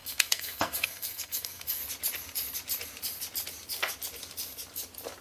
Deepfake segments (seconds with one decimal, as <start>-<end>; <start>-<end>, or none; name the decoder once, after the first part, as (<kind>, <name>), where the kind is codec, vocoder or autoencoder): 0.0-1.8 (codec, SNAC)